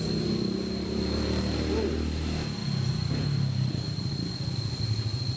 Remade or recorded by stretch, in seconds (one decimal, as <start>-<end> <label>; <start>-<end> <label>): 0.0-5.4 recorded